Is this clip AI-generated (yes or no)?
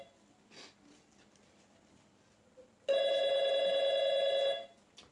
no